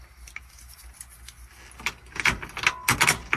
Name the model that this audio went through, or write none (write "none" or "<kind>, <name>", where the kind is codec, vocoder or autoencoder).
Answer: none